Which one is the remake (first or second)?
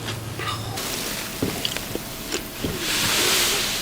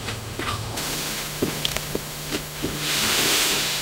second